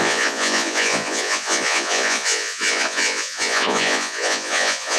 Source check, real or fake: fake